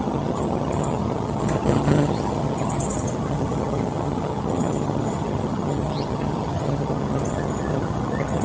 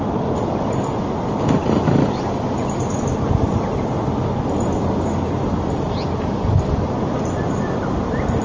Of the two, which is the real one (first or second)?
second